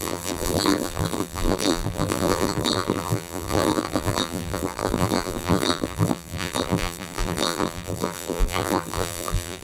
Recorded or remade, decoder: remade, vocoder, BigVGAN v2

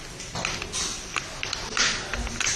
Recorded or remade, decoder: recorded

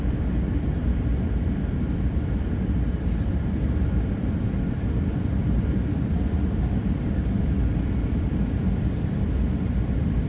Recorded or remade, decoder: remade, vocoder, BigVGAN v2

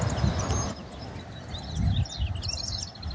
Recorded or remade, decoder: recorded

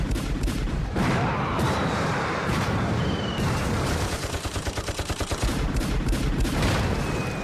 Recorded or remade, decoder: remade, vocoder, BigVGAN v2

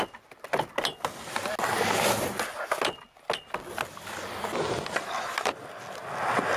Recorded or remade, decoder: recorded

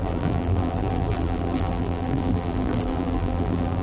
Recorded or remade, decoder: remade, vocoder, BigVGAN v2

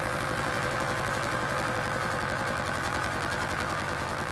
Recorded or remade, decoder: remade, vocoder, BigVGAN v2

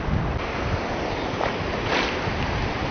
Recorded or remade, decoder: recorded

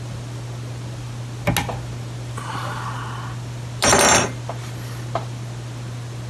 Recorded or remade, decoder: recorded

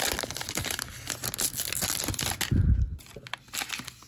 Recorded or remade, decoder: recorded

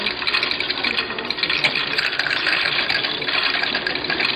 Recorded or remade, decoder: recorded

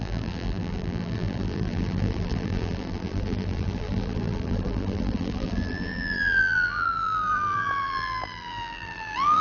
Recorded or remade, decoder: remade, vocoder, BigVGAN v2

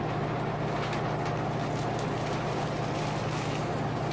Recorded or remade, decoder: recorded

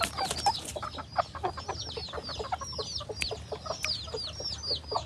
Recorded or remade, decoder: recorded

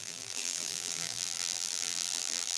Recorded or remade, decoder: remade, vocoder, BigVGAN v2